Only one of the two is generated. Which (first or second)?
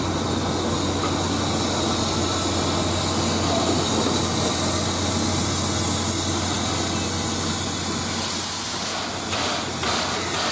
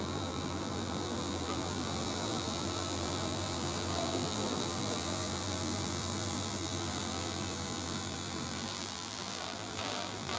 second